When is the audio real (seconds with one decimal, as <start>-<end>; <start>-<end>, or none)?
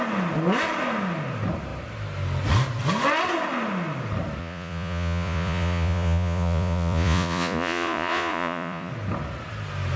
0.0-4.4; 8.9-10.0